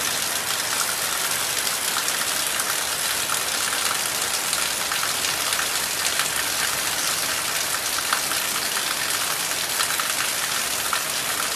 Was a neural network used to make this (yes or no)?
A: no